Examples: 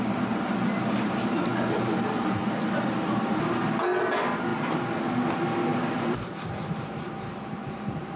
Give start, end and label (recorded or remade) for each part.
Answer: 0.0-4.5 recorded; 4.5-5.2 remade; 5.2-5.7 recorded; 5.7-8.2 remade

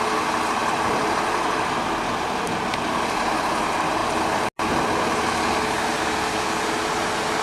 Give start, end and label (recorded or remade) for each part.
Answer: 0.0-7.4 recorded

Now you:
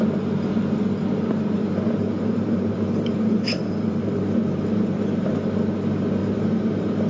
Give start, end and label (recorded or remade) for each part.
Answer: 0.0-1.6 recorded; 1.6-5.3 remade; 5.3-6.2 recorded; 6.2-7.1 remade

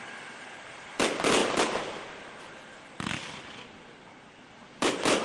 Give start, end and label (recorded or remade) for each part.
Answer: 0.0-5.2 recorded

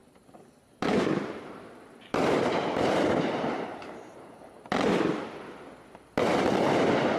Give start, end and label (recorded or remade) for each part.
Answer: 0.0-4.3 remade; 4.3-7.2 recorded

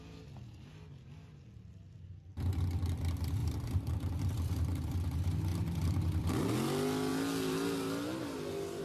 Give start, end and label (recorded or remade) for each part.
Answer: 0.0-3.4 recorded; 3.4-4.9 remade; 4.9-5.5 recorded; 5.5-6.3 remade; 6.3-8.8 recorded